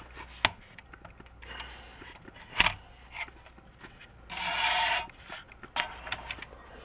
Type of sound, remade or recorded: recorded